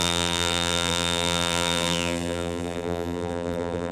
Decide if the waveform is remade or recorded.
remade